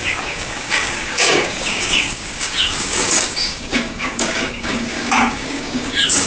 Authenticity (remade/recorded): remade